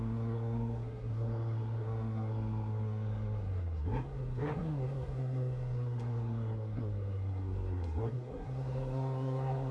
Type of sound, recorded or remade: remade